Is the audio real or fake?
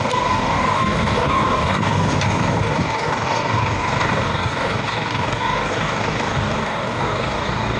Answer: fake